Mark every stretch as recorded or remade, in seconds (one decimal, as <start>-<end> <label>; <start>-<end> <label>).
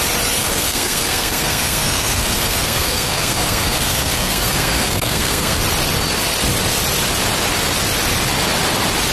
0.0-0.4 recorded; 0.4-5.6 remade; 5.6-9.1 recorded